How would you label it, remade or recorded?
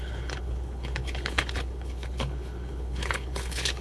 remade